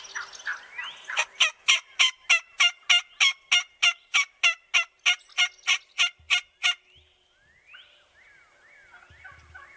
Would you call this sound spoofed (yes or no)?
no